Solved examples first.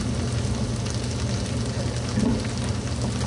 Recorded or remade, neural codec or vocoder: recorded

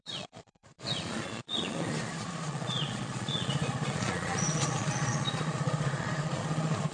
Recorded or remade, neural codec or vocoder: remade, vocoder, Vocos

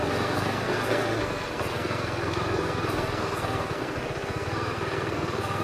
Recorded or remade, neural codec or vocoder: remade, codec, SNAC